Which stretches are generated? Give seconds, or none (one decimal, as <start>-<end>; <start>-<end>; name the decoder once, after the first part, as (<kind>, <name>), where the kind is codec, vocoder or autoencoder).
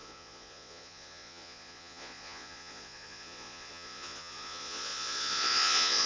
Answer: 0.0-6.1 (vocoder, Vocos)